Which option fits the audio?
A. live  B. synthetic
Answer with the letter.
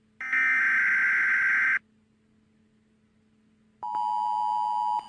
A